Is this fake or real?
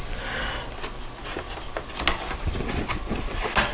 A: real